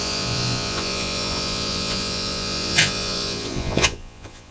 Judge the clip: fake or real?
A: fake